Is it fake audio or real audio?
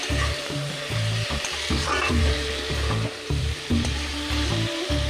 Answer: fake